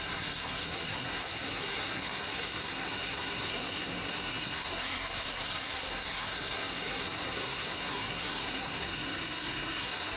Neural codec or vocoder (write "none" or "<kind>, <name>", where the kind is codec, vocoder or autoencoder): codec, SNAC